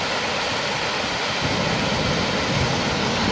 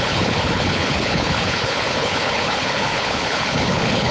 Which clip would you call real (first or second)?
first